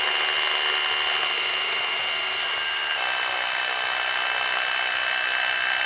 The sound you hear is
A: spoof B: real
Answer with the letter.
B